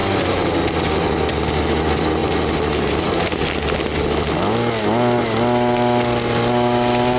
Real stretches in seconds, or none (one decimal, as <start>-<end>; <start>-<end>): 1.8-2.2; 3.4-7.2